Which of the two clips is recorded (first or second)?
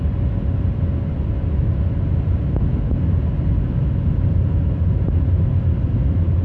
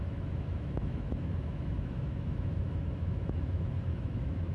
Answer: first